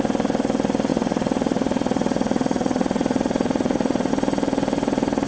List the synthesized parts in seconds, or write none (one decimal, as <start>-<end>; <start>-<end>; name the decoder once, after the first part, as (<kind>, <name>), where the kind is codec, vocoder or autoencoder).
0.9-4.1 (vocoder, Vocos)